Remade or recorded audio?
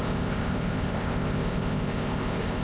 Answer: remade